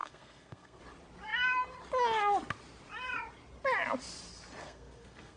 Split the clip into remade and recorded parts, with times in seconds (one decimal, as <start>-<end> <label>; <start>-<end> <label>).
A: 0.0-0.8 remade; 0.8-4.6 recorded; 4.6-5.4 remade